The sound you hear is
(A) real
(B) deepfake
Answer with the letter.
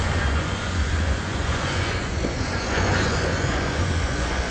B